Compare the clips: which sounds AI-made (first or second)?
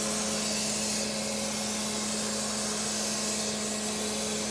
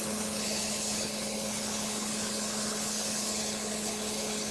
second